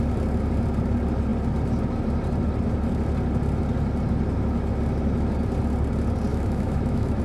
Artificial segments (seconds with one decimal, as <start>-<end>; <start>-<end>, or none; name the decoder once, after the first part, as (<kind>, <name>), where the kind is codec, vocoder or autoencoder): 6.3-7.2 (autoencoder, DAC-VAE)